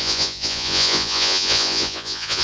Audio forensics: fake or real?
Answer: fake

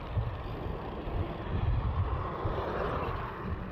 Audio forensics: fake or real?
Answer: real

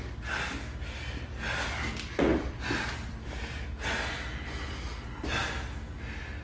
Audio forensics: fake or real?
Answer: real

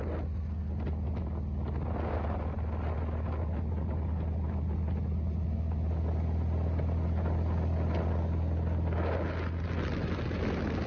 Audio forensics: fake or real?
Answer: real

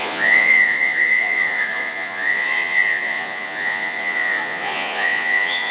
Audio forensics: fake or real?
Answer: fake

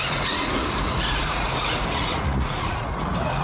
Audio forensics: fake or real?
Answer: fake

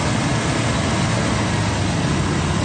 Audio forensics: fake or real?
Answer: real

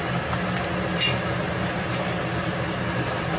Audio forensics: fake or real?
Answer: real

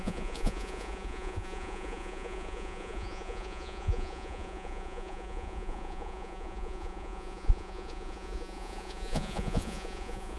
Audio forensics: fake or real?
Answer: fake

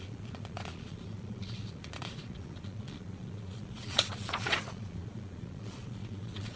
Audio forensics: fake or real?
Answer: fake